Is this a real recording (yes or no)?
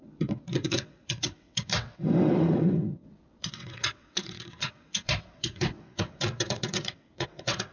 no